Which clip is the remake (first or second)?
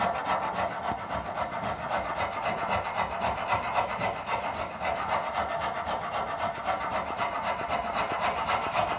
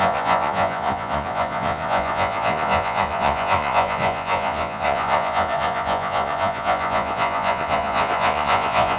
second